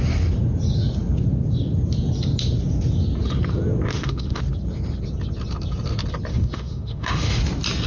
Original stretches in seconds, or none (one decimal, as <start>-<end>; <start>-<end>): 0.0-3.9; 4.4-6.3; 7.4-7.9